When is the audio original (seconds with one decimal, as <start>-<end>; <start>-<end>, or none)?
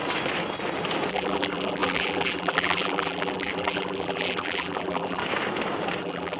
0.0-1.1; 5.2-6.0